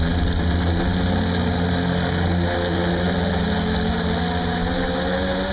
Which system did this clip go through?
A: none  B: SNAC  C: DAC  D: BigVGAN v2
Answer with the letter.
A